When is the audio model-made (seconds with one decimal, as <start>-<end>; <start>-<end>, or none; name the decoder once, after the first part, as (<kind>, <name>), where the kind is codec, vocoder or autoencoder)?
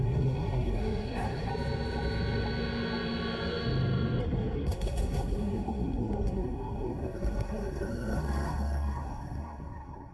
0.0-1.5 (codec, SNAC); 4.2-10.1